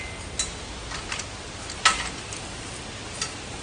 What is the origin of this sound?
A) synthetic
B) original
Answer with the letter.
B